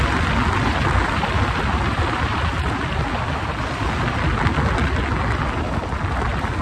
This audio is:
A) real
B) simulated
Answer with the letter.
A